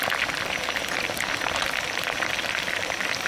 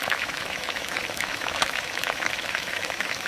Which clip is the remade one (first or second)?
second